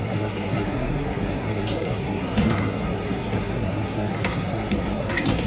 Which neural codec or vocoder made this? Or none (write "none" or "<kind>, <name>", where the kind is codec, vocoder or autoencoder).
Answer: codec, SNAC